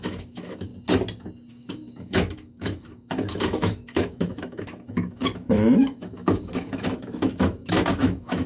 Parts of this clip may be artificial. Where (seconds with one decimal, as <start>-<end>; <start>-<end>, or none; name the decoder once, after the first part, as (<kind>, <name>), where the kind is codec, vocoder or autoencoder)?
0.0-0.7 (autoencoder, DAC-VAE); 1.5-8.5